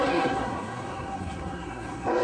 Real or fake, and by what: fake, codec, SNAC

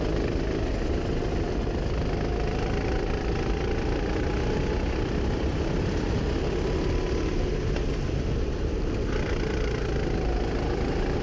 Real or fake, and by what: real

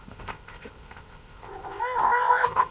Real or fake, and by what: fake, codec, ZipCodec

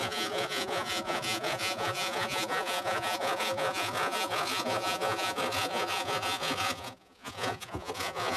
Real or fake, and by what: fake, vocoder, Vocos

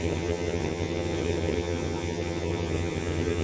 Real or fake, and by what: fake, vocoder, HiFi-GAN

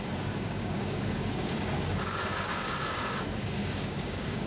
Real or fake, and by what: fake, codec, DAC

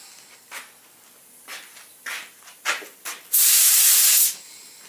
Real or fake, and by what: real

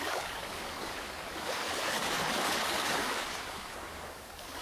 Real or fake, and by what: fake, codec, DAC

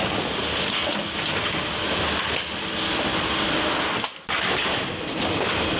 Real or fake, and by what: real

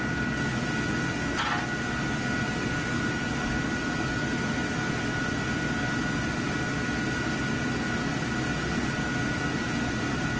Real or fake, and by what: real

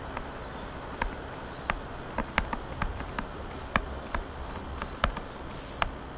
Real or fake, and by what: real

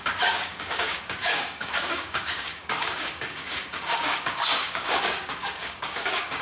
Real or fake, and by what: fake, codec, DAC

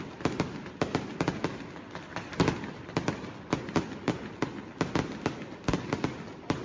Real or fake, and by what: real